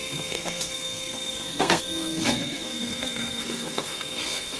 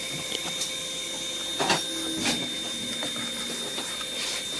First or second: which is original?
second